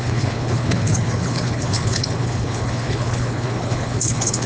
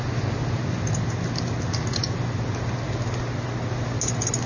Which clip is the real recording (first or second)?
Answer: second